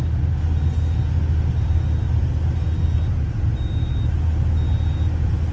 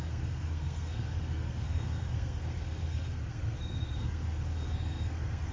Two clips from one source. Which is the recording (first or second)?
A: first